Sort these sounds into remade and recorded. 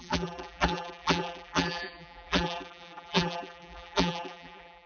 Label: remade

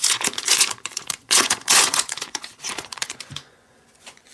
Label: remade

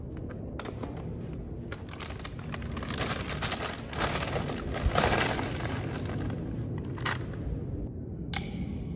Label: recorded